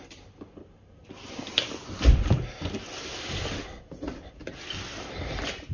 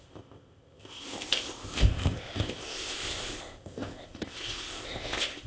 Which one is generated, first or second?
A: second